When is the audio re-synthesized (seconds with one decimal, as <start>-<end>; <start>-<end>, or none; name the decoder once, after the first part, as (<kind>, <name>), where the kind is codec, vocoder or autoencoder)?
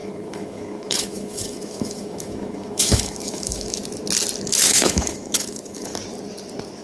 0.0-3.8 (autoencoder, DAC-VAE); 4.5-5.9